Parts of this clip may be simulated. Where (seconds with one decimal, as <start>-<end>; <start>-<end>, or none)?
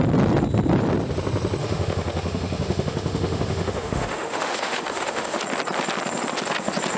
1.6-5.4